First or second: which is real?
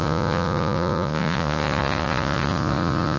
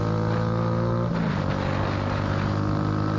second